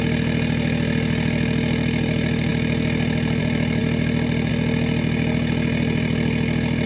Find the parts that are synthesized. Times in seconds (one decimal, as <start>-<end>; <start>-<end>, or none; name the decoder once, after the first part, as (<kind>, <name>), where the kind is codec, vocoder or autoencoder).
none